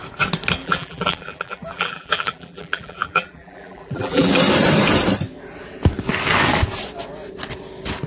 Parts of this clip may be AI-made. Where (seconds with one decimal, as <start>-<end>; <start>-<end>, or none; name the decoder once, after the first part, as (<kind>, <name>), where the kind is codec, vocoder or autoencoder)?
0.6-4.3 (vocoder, BigVGAN v2)